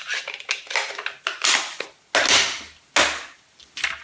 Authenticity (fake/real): real